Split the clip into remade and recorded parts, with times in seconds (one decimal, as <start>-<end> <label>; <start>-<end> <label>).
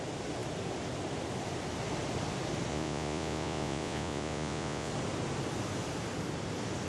0.0-2.7 recorded; 2.7-4.9 remade; 4.9-6.9 recorded